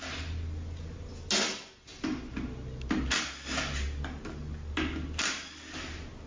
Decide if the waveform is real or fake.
real